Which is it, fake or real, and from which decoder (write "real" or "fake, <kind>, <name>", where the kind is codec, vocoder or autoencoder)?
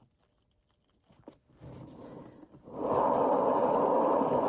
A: real